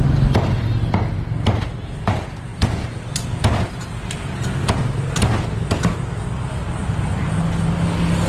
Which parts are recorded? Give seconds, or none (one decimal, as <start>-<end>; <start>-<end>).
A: 0.0-8.3